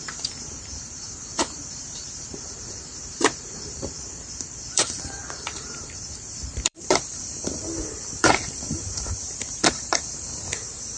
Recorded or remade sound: remade